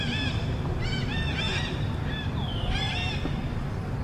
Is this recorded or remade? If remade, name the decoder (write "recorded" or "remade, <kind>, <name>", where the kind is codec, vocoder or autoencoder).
recorded